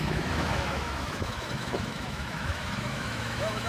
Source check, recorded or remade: remade